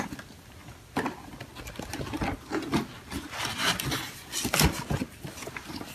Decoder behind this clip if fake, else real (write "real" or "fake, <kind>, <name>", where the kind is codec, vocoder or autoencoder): real